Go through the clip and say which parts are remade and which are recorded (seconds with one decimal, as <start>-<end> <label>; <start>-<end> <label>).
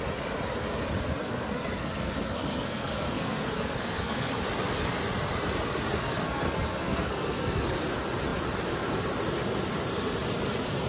0.0-1.2 recorded; 1.2-4.3 remade; 4.3-6.0 recorded; 6.0-7.8 remade; 7.8-10.9 recorded